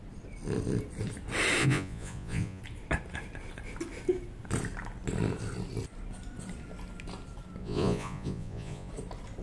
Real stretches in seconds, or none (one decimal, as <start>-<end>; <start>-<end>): 0.0-1.6; 2.6-7.6; 8.9-9.4